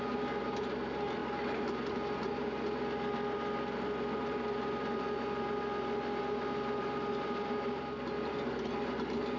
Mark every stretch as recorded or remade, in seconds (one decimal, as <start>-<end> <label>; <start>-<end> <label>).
0.0-9.4 recorded